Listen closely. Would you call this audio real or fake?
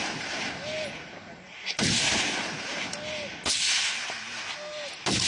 real